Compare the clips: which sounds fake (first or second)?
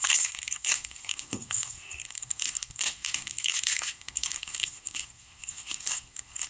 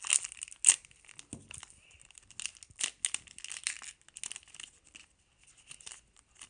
first